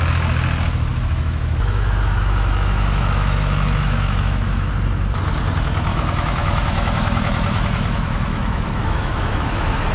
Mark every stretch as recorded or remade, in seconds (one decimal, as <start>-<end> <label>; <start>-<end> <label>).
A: 0.0-0.9 recorded; 0.9-4.7 remade; 4.7-5.9 recorded; 5.9-9.9 remade